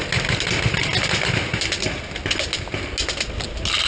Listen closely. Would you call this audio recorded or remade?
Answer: recorded